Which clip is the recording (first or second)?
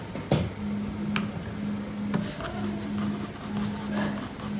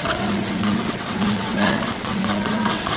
first